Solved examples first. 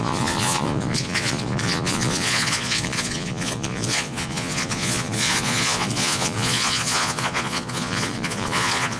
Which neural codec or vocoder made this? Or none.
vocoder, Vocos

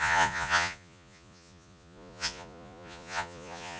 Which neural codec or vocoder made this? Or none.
vocoder, Vocos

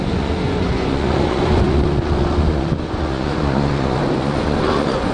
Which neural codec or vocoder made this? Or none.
vocoder, Vocos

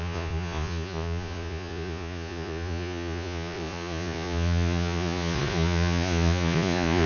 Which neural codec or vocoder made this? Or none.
vocoder, Vocos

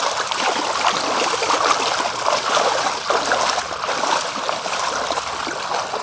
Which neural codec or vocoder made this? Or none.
none